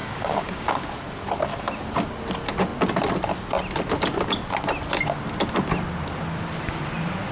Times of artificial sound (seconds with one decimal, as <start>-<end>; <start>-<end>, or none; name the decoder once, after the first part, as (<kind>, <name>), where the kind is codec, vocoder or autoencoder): 0.0-0.9 (codec, DAC)